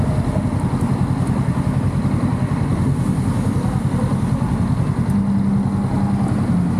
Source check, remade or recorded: recorded